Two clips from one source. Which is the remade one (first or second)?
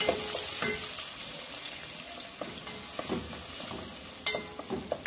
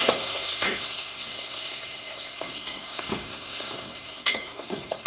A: second